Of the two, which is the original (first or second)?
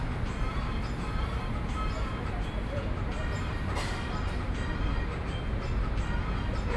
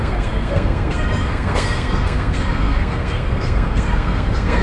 first